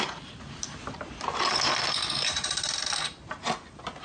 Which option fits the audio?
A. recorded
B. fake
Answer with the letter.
A